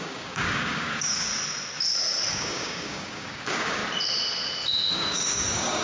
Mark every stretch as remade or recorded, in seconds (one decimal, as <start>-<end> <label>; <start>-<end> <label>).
0.0-1.3 remade; 1.3-2.3 recorded; 2.3-3.8 remade; 3.8-4.9 recorded; 4.9-5.8 remade